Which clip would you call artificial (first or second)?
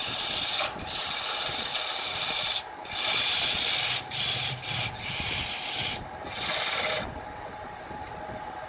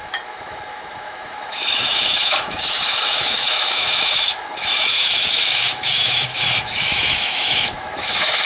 second